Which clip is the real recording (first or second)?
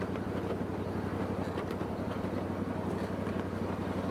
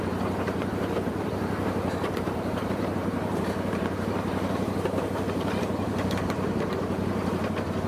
first